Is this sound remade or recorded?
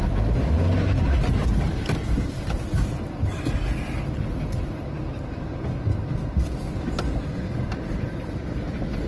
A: recorded